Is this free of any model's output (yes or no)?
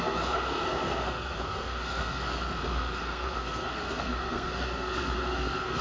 no